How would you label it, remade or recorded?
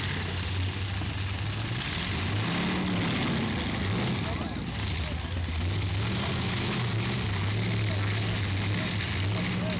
recorded